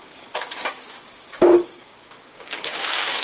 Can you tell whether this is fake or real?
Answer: fake